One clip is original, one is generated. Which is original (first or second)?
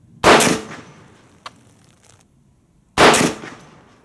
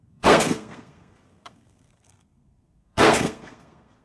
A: first